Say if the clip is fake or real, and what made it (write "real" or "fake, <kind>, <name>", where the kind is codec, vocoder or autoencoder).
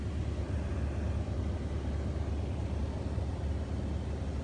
real